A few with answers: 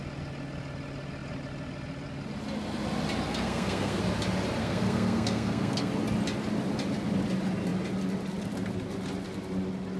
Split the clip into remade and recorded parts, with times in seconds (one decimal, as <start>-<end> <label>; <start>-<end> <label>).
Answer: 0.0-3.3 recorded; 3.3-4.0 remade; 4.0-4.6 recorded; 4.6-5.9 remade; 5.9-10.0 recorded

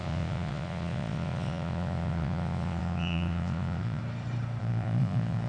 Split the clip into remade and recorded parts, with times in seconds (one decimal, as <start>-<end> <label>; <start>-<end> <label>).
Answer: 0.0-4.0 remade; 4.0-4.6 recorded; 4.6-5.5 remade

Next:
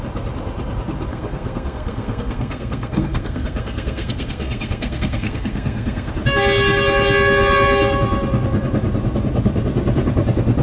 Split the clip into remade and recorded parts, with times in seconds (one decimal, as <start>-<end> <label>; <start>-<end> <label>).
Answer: 0.0-1.1 recorded; 1.1-6.1 remade; 6.1-10.6 recorded